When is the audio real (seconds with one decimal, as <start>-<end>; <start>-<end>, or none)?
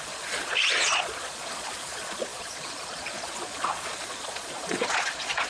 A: none